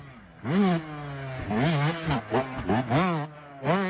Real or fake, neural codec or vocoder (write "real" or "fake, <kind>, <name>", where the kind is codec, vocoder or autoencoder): real